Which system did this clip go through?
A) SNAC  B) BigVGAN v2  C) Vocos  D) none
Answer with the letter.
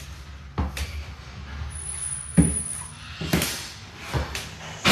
D